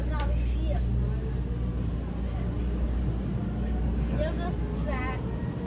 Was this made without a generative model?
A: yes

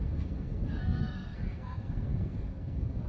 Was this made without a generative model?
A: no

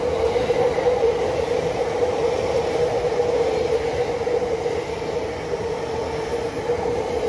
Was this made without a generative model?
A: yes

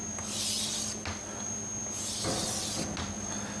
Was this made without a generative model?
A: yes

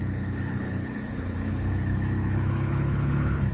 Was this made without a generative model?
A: no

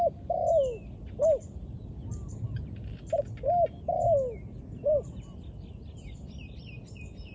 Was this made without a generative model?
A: yes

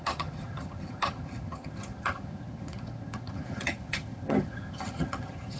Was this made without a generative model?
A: no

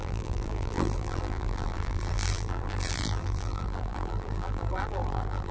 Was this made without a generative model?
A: no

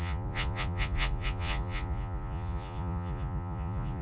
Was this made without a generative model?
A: no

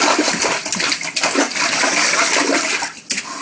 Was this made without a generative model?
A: yes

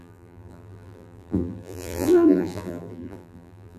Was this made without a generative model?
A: no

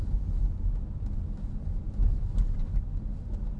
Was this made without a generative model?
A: yes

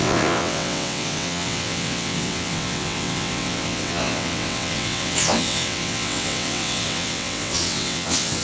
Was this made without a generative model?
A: no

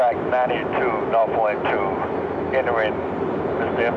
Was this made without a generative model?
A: yes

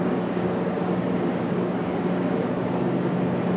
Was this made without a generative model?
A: no